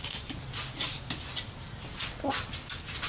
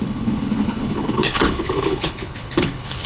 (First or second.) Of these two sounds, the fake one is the second